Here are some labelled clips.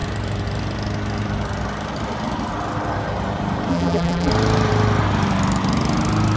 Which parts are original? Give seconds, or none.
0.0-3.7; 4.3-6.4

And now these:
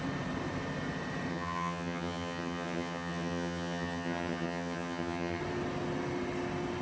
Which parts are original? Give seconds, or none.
0.0-1.3; 5.4-6.8

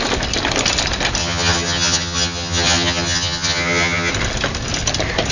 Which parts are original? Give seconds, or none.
0.0-1.2; 4.1-5.3

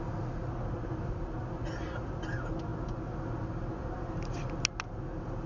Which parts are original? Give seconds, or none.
0.0-5.5

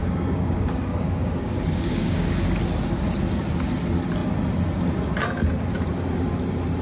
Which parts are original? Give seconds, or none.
2.4-6.8